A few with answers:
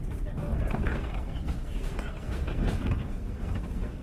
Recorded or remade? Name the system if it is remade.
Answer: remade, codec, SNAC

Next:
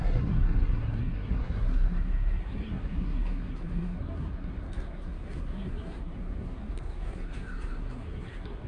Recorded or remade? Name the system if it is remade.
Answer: remade, codec, SNAC